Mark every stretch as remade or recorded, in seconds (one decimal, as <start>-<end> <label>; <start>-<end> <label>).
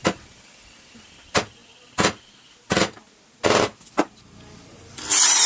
0.0-5.5 recorded